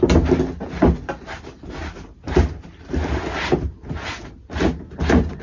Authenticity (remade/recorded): recorded